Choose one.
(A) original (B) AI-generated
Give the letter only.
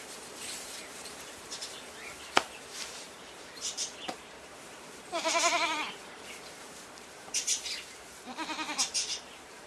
B